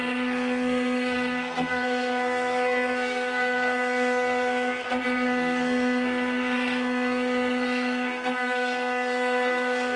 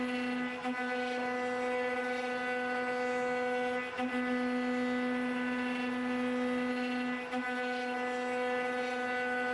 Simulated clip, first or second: first